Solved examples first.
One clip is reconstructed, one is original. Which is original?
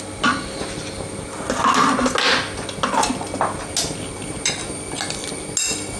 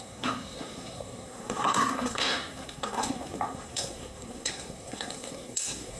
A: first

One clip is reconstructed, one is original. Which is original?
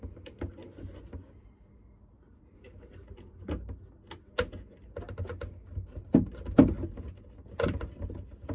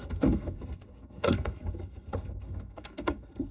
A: first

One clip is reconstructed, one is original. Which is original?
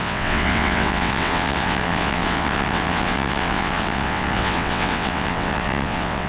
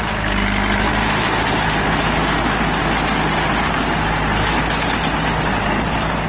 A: second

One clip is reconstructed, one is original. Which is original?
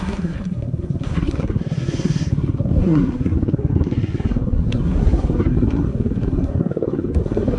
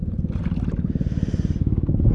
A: second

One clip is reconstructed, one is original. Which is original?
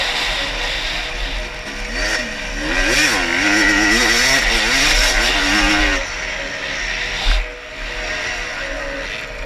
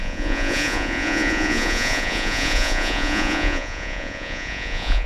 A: first